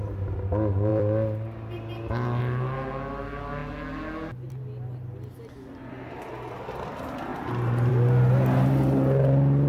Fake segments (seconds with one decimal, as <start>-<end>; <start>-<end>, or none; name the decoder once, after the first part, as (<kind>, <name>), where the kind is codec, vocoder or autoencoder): 0.9-2.4 (vocoder, BigVGAN v2)